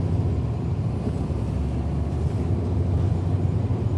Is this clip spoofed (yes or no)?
no